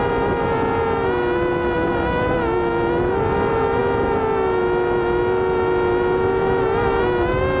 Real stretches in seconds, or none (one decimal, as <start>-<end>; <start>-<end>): 0.0-7.6